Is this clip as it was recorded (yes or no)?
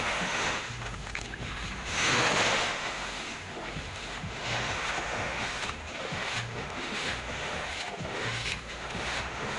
no